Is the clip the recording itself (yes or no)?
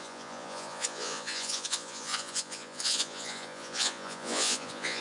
no